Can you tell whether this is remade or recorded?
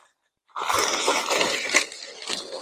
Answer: recorded